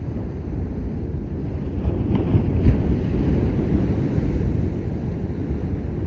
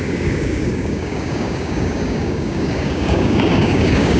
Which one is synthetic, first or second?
second